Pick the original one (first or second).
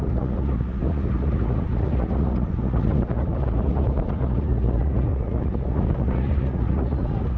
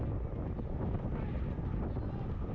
second